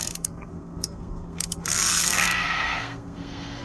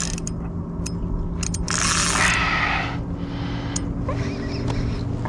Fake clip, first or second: first